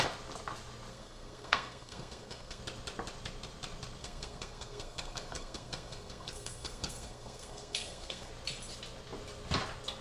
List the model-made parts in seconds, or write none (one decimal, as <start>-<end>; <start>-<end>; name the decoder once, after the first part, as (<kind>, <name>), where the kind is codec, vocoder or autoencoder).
0.9-2.6 (codec, SNAC); 4.0-8.3